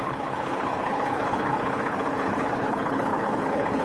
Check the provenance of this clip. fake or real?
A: fake